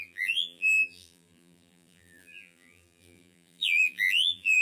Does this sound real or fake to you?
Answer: fake